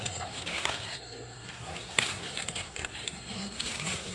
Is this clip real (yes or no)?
no